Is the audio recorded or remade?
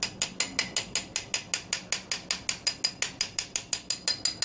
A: recorded